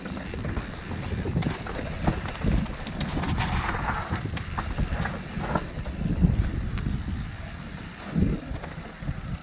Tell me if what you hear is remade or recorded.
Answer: recorded